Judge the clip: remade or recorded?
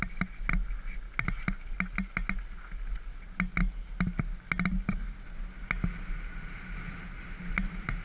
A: recorded